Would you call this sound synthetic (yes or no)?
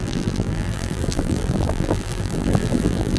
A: yes